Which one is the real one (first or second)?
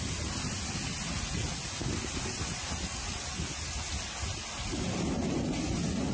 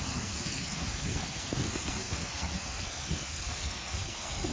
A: first